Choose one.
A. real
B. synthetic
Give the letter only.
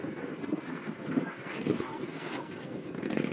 B